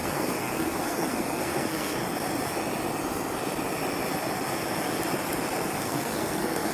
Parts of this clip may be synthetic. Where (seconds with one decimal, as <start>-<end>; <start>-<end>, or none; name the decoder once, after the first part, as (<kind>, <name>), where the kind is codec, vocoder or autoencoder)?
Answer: 0.0-2.0 (codec, SNAC); 5.8-6.7